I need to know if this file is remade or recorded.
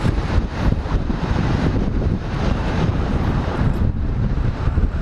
remade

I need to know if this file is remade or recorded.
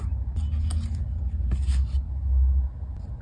recorded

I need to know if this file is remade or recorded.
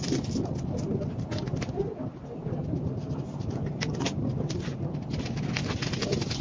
recorded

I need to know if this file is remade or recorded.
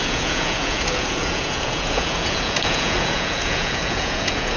remade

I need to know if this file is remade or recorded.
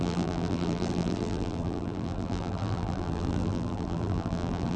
remade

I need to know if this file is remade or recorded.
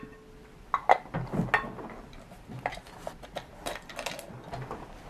recorded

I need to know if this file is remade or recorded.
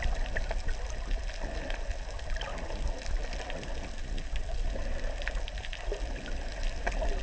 recorded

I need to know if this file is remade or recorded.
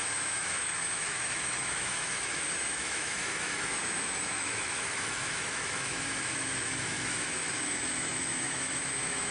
remade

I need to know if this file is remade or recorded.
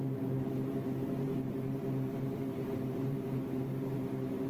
remade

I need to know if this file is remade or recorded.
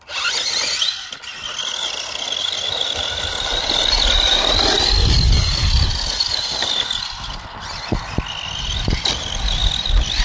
recorded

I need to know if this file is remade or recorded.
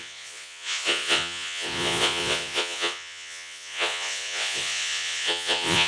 remade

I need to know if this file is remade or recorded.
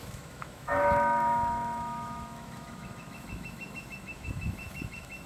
remade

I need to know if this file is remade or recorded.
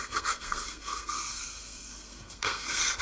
remade